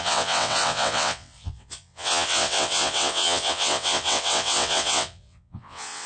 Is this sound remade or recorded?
remade